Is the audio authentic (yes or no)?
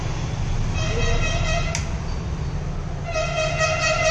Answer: yes